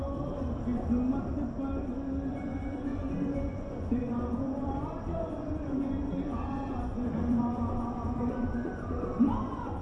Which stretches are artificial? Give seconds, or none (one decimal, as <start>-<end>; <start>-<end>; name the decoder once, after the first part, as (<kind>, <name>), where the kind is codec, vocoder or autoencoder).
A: 2.3-9.8 (vocoder, Vocos)